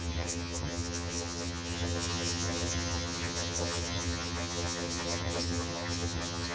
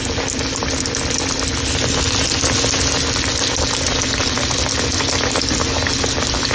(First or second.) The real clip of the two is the second